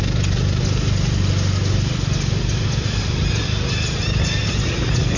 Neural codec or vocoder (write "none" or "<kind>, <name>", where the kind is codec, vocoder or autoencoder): none